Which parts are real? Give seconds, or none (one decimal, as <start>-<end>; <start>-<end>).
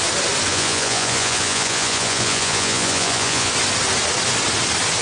0.0-0.5; 3.5-5.0